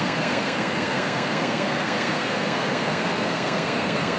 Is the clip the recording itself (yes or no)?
no